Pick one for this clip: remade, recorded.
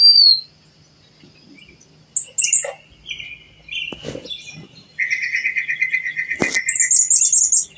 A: recorded